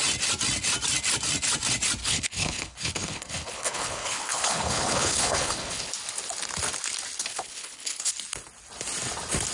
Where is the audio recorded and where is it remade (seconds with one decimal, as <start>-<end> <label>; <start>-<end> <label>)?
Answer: 0.0-2.0 recorded; 2.0-5.9 remade; 5.9-7.3 recorded; 7.3-8.1 remade; 8.1-9.5 recorded

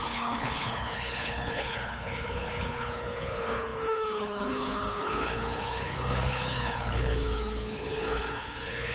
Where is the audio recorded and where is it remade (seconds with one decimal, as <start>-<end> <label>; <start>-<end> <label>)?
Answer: 0.0-8.9 remade

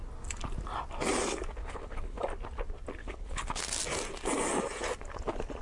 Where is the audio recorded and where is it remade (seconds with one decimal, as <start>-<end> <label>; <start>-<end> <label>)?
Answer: 0.0-1.6 recorded; 1.6-2.2 remade; 2.2-3.0 recorded; 3.0-3.6 remade; 3.6-5.6 recorded

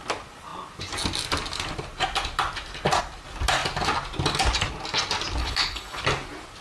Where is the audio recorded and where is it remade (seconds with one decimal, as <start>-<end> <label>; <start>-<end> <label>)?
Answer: 0.0-5.4 recorded; 5.4-6.0 remade; 6.0-6.6 recorded

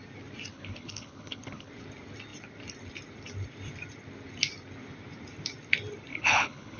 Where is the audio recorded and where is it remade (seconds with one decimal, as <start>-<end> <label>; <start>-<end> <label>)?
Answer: 0.0-0.5 recorded; 0.5-1.7 remade; 1.7-6.1 recorded; 6.1-6.8 remade

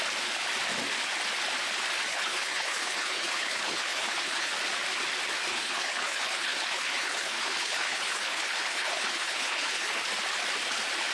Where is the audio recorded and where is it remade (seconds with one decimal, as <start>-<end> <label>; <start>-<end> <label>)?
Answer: 0.0-2.1 recorded; 2.1-4.5 remade; 4.5-5.5 recorded; 5.5-10.0 remade; 10.0-11.1 recorded

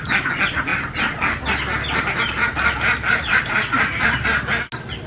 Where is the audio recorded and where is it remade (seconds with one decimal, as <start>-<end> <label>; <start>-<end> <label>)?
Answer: 0.0-5.1 recorded